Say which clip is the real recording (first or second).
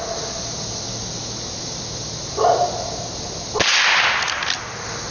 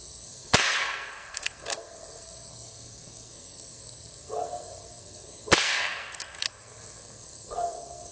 first